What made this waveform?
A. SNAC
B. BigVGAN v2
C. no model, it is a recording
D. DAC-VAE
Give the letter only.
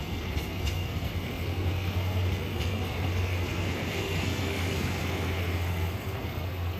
A